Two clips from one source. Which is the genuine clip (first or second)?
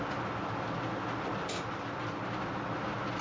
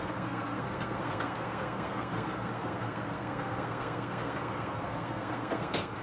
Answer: first